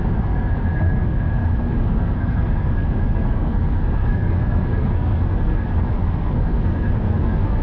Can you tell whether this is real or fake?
fake